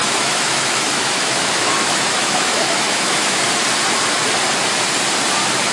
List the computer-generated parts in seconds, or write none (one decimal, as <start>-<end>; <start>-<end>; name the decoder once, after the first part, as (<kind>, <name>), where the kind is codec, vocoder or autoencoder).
0.0-3.4 (autoencoder, DAC-VAE)

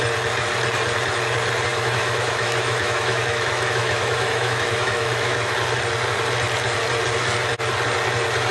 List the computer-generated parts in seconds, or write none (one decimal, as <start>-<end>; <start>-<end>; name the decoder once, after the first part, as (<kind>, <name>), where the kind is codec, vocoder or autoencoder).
1.7-5.5 (autoencoder, DAC-VAE)

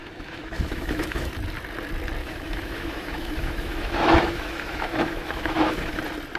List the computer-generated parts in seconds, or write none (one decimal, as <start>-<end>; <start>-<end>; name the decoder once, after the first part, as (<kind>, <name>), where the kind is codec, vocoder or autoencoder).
0.0-1.3 (autoencoder, DAC-VAE); 2.2-6.0

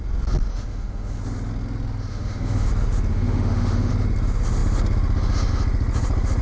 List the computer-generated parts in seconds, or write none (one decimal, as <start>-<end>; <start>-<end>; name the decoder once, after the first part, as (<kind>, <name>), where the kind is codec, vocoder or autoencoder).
0.5-1.2 (autoencoder, DAC-VAE); 2.1-2.7; 3.1-3.9

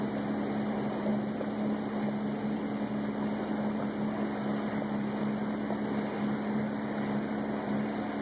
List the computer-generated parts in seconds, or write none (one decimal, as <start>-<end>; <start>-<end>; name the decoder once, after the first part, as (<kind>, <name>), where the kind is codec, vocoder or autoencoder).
none